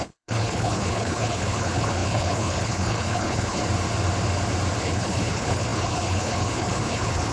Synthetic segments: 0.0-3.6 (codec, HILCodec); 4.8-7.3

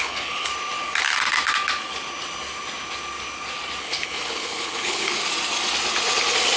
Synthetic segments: 0.0-0.5 (codec, HILCodec); 3.8-5.2

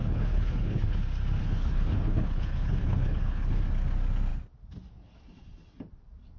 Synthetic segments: 0.0-1.0 (codec, HILCodec); 1.4-3.6

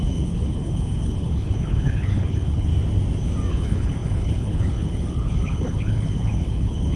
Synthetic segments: 0.0-2.7 (codec, HILCodec); 3.5-7.0

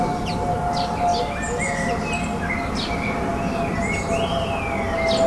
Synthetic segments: none

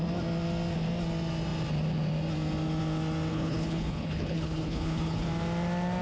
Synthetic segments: 3.3-5.3 (codec, HILCodec)

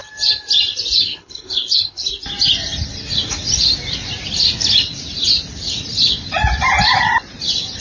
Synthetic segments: 1.1-2.1 (codec, HILCodec)